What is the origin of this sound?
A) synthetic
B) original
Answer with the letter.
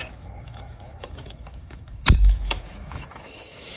A